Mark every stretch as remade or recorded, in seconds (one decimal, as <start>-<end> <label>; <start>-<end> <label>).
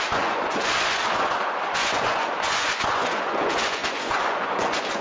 0.0-5.0 remade